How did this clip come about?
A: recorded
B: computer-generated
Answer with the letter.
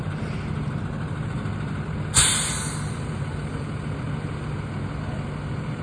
A